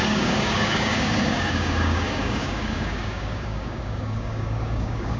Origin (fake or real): fake